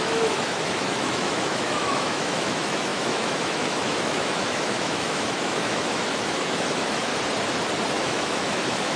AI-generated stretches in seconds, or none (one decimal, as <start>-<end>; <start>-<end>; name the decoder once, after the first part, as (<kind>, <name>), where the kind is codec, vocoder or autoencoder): 0.0-7.1 (autoencoder, DAC-VAE); 7.9-9.0